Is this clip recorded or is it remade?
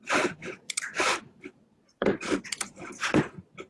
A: remade